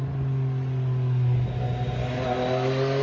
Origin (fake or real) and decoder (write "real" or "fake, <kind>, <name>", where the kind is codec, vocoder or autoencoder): real